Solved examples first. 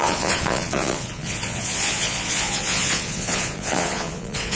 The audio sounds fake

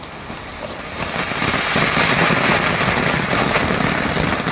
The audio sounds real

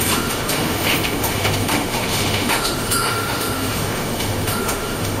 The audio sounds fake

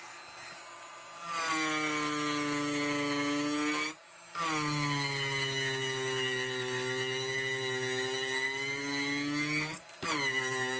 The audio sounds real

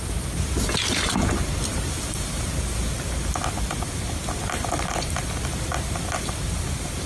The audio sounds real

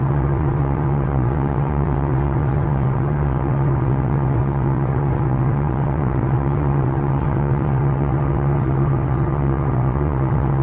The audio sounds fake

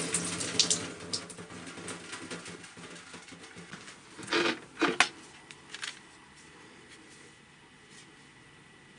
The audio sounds real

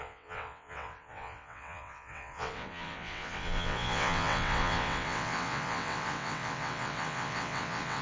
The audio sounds fake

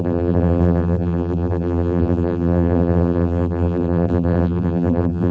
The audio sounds fake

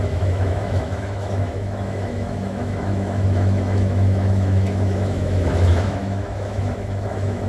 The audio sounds fake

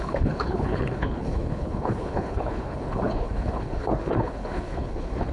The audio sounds fake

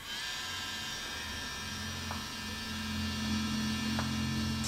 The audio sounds real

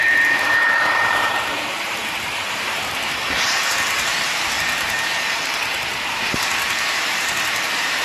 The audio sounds fake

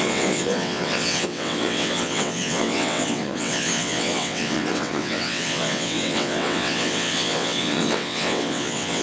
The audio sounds fake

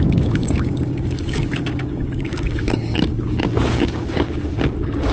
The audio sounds fake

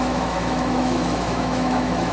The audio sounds fake